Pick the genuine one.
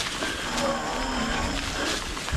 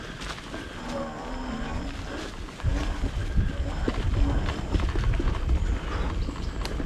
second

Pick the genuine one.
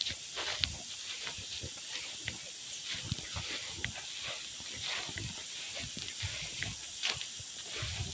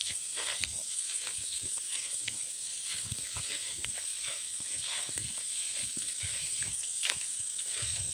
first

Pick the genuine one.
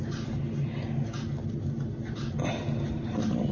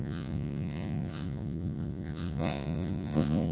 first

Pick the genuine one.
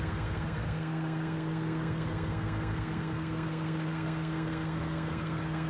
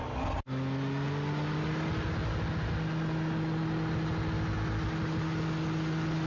second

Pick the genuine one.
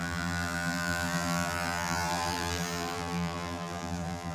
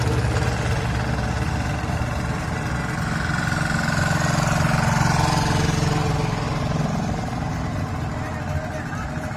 second